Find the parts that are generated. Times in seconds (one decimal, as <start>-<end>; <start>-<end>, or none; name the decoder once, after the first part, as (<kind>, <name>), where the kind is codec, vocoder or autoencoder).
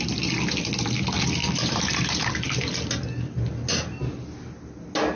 1.4-2.3 (vocoder, BigVGAN v2)